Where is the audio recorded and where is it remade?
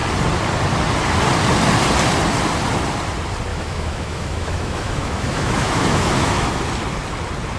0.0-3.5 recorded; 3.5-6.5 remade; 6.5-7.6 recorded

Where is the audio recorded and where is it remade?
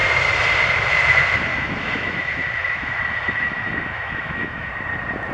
0.0-1.5 recorded; 1.5-4.7 remade; 4.7-5.3 recorded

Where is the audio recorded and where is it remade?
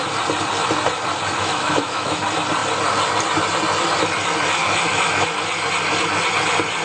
0.0-1.4 recorded; 1.4-2.2 remade; 2.2-4.6 recorded; 4.6-5.3 remade; 5.3-6.8 recorded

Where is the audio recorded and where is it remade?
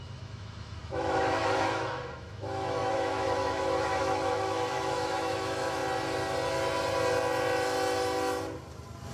0.0-5.8 remade; 5.8-9.1 recorded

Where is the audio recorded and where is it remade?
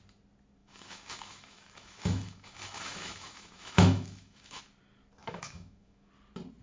0.0-0.6 recorded; 0.6-4.6 remade; 4.6-5.2 recorded; 5.2-6.1 remade; 6.1-6.6 recorded